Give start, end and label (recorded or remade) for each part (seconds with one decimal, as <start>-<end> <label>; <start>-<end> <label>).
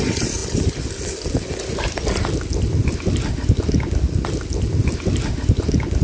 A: 0.0-6.0 recorded